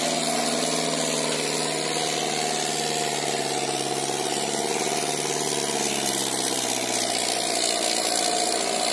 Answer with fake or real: real